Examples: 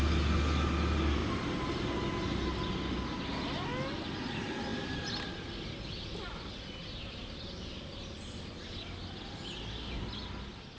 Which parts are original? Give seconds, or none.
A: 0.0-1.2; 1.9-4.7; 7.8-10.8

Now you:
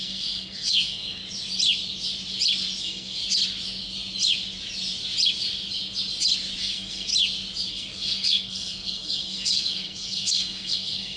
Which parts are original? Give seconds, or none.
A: 1.2-2.8; 3.2-6.6; 7.1-7.7

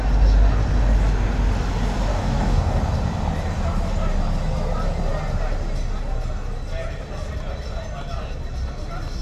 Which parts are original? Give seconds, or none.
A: 0.0-2.1; 2.8-9.2

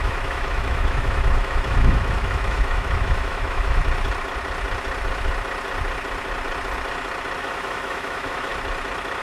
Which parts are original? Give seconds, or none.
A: 3.8-7.4; 8.5-9.2

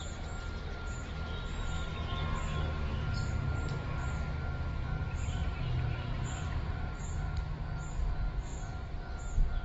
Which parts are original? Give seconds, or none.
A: 0.0-5.0; 6.9-8.5; 9.0-9.6